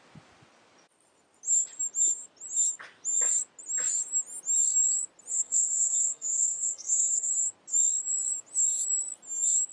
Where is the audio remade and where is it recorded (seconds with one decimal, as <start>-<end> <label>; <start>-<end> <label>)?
0.0-5.3 recorded; 5.3-7.3 remade; 7.3-9.7 recorded